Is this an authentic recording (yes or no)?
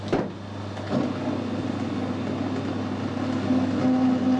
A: yes